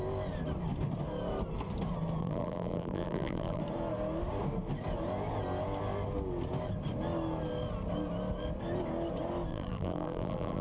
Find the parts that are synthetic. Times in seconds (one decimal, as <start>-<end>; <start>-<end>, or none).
2.2-3.6; 9.5-10.6